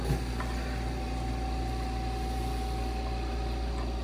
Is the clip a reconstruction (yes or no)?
no